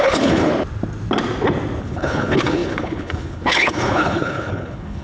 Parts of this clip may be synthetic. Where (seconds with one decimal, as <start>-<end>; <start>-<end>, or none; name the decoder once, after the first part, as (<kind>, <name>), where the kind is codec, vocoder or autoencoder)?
0.0-0.5 (codec, HILCodec); 1.8-5.0